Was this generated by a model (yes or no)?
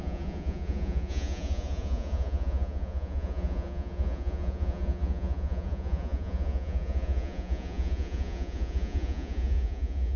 yes